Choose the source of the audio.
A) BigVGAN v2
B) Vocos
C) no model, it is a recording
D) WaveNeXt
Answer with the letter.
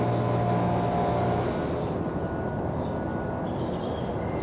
C